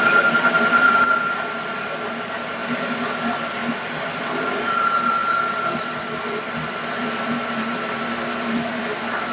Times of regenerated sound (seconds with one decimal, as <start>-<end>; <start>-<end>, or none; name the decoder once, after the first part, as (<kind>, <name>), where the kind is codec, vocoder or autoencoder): 0.0-2.6 (vocoder, BigVGAN v2); 4.0-9.3